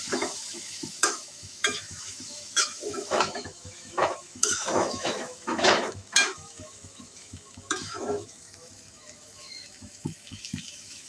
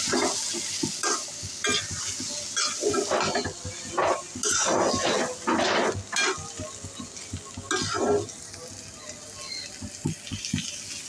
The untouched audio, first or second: second